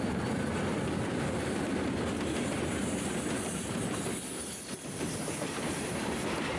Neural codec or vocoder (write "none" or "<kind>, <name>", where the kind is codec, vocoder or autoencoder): none